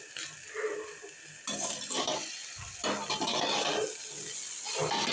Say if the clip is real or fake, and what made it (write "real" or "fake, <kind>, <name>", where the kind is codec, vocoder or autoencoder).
real